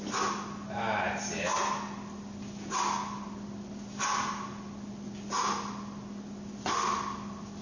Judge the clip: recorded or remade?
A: recorded